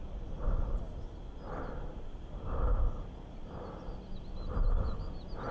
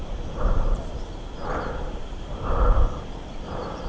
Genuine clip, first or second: first